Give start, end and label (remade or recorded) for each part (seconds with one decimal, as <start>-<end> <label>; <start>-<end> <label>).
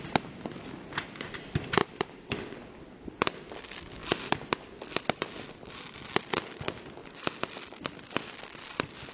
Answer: 0.0-9.1 recorded